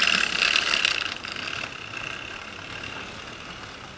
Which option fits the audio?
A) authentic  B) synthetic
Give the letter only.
A